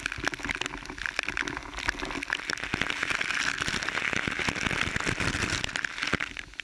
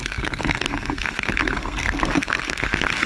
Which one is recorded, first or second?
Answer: first